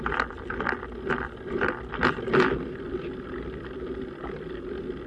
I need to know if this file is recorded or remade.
recorded